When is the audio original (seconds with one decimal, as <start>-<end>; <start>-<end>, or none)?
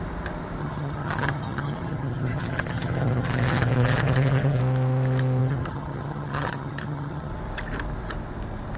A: 0.0-0.6; 4.6-5.4; 7.3-8.8